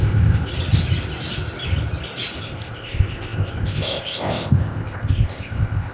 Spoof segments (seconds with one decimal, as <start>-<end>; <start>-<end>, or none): 0.0-0.5; 2.4-5.9